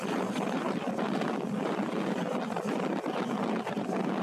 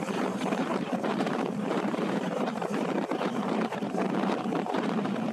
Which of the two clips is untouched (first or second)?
first